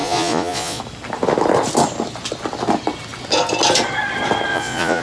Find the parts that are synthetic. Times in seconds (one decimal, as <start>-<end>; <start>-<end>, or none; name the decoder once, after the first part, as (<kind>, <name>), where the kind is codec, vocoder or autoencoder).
0.0-0.8 (vocoder, Vocos); 4.5-5.0